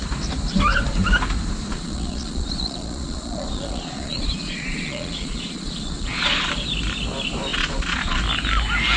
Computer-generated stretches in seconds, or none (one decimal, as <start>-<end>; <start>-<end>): 1.7-6.5; 7.5-8.2